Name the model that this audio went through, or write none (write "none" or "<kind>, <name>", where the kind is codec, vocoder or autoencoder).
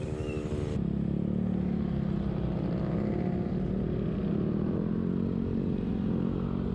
none